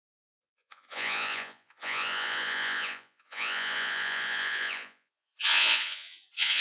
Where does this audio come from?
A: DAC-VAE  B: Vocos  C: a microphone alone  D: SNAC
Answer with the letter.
B